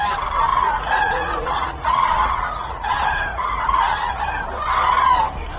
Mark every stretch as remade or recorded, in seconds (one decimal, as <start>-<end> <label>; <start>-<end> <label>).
0.0-0.5 recorded; 0.5-2.9 remade; 2.9-3.3 recorded; 3.3-4.2 remade; 4.2-5.6 recorded

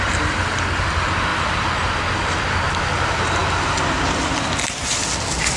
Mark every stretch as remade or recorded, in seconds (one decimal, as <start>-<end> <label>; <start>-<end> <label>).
0.0-5.6 recorded

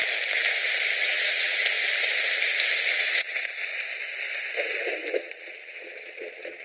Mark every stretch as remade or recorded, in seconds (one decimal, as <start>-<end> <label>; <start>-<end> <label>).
0.0-1.0 recorded; 1.0-1.6 remade; 1.6-2.9 recorded; 2.9-3.7 remade; 3.7-5.1 recorded; 5.1-6.6 remade

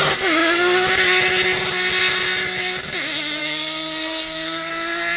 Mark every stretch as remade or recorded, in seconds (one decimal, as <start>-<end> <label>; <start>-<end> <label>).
0.0-3.4 recorded; 3.4-4.7 remade; 4.7-5.2 recorded

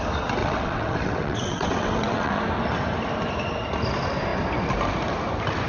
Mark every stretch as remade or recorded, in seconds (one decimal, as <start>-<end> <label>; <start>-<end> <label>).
0.0-0.4 recorded; 0.4-2.4 remade; 2.4-5.7 recorded